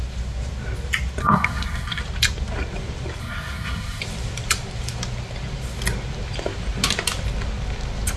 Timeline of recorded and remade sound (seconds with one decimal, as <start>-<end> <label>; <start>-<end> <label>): 0.0-1.2 recorded; 1.2-2.0 remade; 2.0-3.2 recorded; 3.2-4.0 remade; 4.0-8.2 recorded